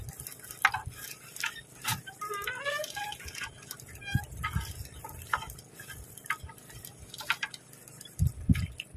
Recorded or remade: recorded